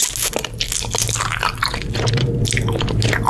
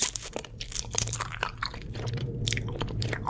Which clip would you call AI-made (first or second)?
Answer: second